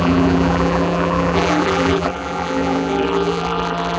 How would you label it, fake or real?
fake